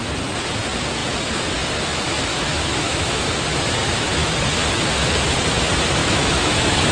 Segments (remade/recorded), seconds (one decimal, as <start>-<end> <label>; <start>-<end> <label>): 0.0-2.3 recorded; 2.3-3.3 remade; 3.3-3.8 recorded; 3.8-4.3 remade; 4.3-6.0 recorded; 6.0-6.9 remade